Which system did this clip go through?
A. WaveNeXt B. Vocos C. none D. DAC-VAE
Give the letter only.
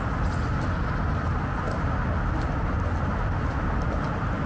C